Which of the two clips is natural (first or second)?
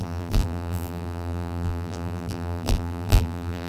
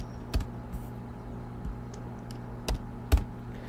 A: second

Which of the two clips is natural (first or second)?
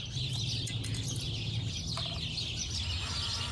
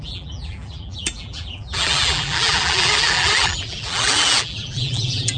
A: first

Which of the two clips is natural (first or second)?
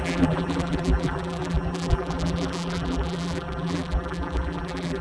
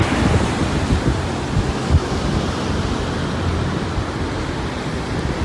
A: second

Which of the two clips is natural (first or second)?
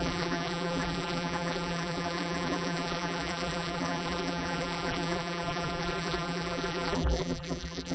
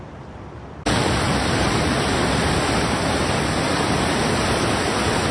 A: second